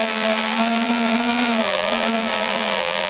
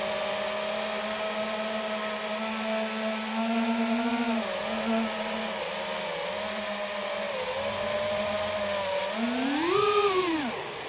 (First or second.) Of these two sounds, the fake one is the first